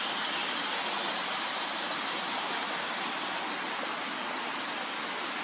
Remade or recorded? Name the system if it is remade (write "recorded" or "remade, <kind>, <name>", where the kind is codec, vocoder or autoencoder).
recorded